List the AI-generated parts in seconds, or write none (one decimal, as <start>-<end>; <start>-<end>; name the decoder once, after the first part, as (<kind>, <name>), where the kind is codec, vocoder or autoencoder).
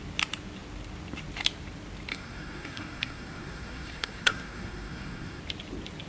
2.1-5.4 (codec, SNAC)